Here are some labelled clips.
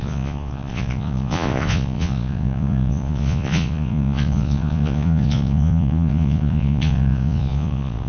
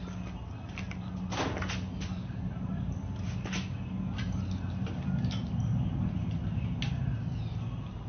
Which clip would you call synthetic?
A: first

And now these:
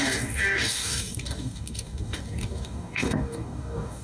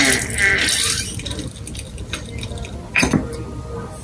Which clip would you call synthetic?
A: first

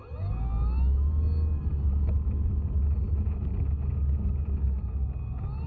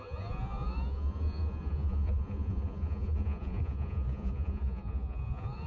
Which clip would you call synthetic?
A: second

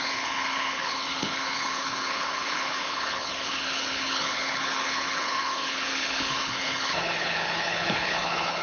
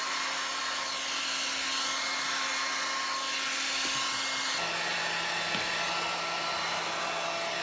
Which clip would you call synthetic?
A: first